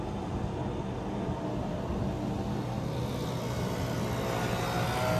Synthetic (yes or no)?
no